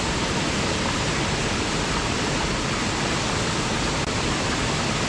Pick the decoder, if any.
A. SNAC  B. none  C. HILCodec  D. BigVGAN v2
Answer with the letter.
B